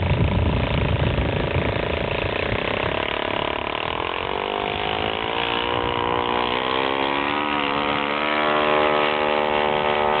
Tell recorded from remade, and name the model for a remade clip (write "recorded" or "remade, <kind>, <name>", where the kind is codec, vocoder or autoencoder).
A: recorded